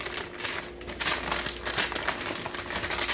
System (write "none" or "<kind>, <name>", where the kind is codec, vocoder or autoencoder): none